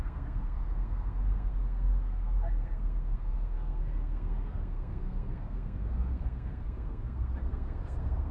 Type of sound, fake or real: fake